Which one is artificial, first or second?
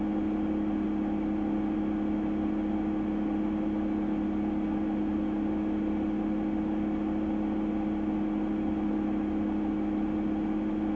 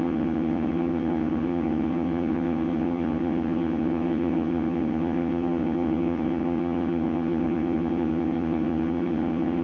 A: second